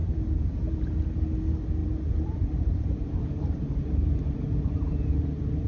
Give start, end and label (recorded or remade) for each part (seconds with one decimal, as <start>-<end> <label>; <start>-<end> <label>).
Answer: 0.0-1.8 recorded; 1.8-5.0 remade; 5.0-5.7 recorded